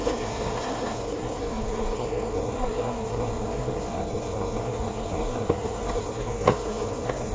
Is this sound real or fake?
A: fake